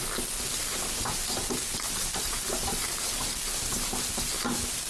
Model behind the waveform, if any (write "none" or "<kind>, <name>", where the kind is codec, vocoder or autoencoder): none